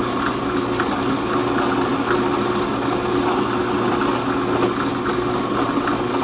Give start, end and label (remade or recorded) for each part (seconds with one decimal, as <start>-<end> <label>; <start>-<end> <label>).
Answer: 0.0-6.2 recorded